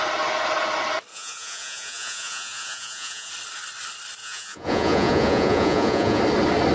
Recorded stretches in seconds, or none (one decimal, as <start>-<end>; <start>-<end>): 0.0-1.1; 3.3-4.2; 6.2-6.7